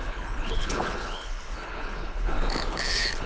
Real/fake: fake